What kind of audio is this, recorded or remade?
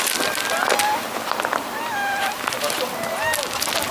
recorded